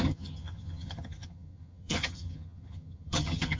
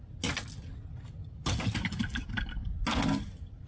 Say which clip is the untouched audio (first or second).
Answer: second